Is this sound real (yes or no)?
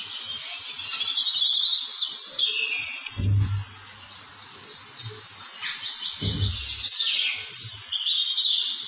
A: yes